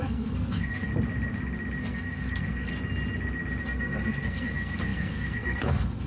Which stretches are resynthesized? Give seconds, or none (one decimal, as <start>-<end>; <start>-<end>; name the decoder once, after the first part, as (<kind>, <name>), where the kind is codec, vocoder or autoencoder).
0.0-0.9 (codec, SNAC); 1.8-2.7; 3.6-6.1